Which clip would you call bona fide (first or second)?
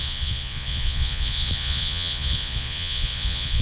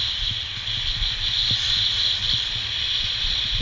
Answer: second